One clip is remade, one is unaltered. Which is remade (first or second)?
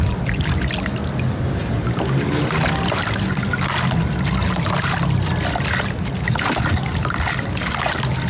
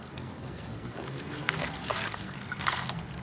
second